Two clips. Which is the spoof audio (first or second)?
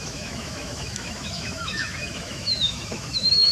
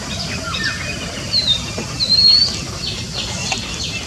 first